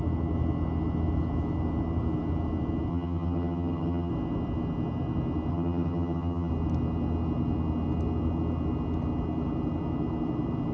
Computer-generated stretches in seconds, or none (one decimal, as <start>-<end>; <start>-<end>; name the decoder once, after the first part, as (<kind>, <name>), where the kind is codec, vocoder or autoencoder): 2.9-4.1 (vocoder, HiFi-GAN); 5.5-6.5